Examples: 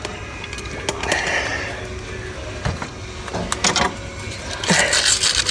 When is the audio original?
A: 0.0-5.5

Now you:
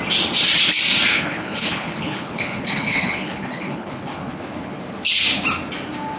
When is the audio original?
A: 0.0-1.1; 4.8-6.2

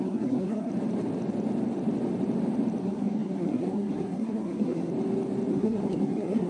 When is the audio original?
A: 0.7-2.8; 4.9-5.5

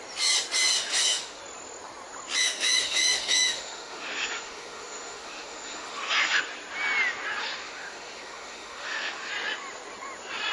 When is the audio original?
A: 0.0-0.7; 1.4-2.4; 6.4-7.4; 9.3-10.5

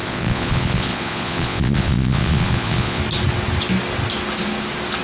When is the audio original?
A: 3.0-5.0

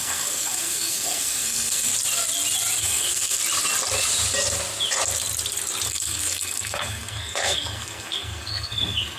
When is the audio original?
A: 1.9-2.8; 3.4-5.9

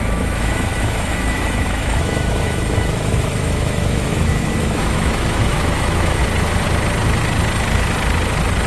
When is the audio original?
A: 6.2-8.7